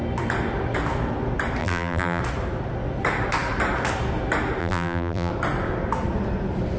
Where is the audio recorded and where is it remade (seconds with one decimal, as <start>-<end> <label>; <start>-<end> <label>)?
0.0-1.6 recorded; 1.6-2.2 remade; 2.2-4.6 recorded; 4.6-5.3 remade; 5.3-6.8 recorded